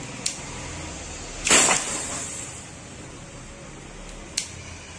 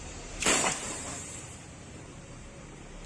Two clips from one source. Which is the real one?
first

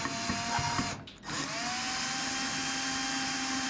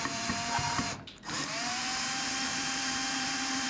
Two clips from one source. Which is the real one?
first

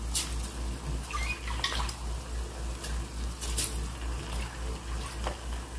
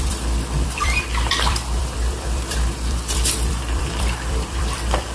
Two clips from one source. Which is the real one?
first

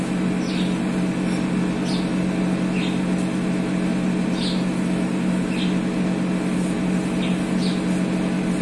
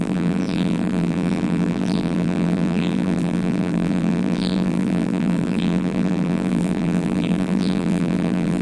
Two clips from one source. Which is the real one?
first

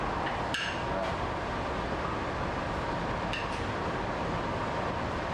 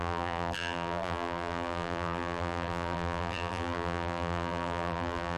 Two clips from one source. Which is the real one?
first